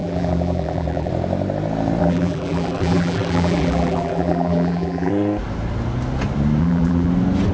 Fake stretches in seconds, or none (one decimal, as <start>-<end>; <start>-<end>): 0.0-1.1; 2.0-5.1; 6.6-7.1